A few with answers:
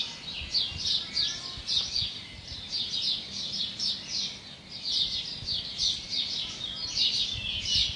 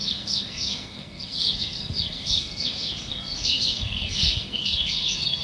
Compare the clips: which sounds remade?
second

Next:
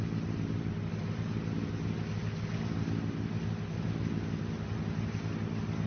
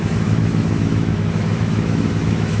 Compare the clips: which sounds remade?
second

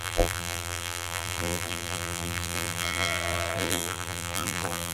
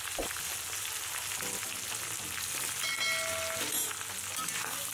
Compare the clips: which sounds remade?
first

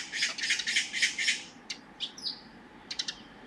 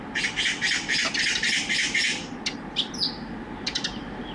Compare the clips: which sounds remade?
first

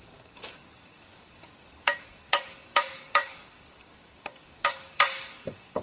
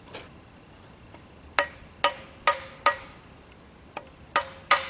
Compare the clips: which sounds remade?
first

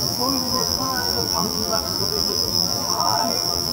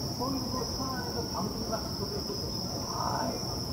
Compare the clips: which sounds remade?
first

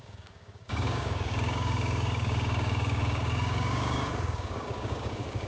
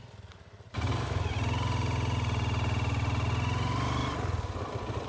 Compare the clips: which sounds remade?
first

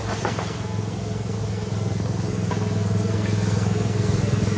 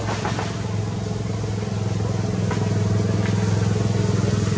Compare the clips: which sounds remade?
first